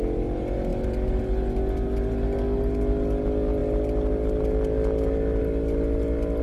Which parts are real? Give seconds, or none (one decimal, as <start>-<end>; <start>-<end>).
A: 0.0-6.4